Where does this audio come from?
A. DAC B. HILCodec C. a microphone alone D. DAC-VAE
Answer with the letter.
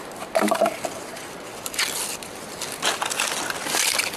C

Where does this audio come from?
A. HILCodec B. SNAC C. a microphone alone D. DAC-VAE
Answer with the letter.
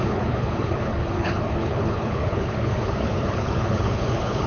A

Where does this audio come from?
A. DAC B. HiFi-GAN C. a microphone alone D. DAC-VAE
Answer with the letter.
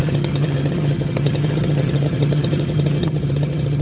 B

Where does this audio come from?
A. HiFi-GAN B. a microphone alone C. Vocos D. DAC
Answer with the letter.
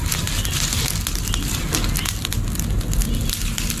B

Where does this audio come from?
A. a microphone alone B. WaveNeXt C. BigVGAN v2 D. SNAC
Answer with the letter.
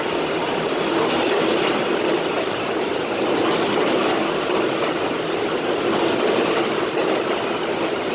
A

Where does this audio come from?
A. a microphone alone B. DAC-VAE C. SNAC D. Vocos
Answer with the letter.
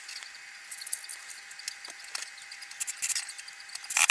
A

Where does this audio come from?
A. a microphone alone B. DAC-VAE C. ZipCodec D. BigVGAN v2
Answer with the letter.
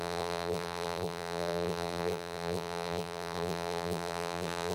D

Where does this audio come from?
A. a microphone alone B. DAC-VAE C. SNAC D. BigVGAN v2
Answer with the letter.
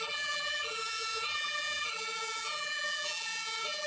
D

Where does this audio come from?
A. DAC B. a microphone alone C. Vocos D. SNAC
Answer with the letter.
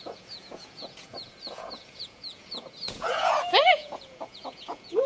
C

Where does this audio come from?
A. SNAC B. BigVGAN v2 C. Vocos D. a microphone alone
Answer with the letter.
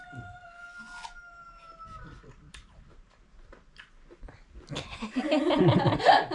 D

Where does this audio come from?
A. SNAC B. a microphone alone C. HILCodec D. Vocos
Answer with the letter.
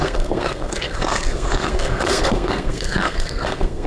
A